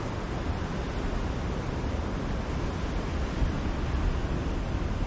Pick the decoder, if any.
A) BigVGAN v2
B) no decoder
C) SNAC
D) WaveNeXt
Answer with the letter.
B